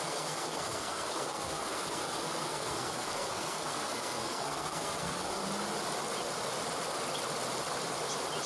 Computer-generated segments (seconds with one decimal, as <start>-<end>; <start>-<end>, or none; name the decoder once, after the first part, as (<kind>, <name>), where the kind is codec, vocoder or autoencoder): 0.0-5.4 (codec, SNAC)